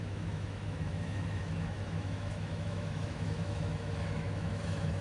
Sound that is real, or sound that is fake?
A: fake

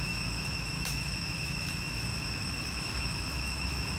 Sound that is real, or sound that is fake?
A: fake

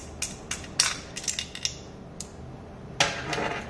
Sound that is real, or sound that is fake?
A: real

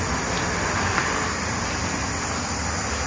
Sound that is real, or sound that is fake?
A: real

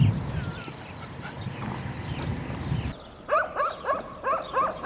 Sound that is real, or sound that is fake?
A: real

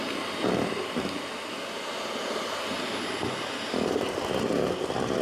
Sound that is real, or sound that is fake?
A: real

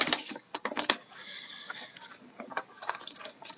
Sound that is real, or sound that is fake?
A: fake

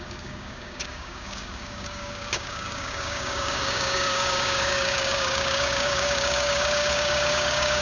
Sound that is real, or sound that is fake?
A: fake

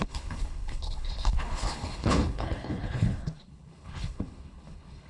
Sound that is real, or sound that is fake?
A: fake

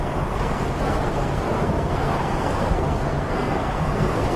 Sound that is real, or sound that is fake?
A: fake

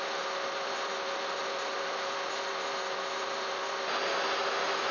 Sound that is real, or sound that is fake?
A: real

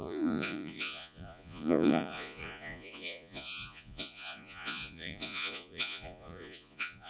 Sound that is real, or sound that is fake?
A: fake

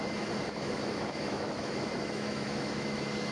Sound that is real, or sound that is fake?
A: fake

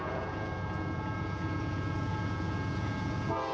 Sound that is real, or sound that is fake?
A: fake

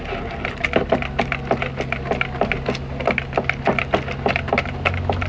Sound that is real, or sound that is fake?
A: real